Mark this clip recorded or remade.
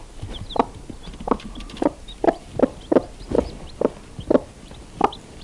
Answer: recorded